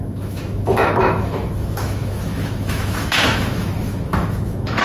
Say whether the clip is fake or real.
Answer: fake